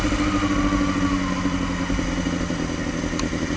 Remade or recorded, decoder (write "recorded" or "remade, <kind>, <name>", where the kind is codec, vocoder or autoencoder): recorded